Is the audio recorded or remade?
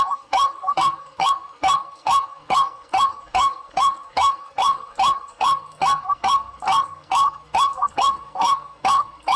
remade